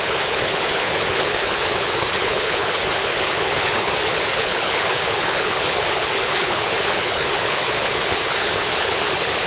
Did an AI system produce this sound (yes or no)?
yes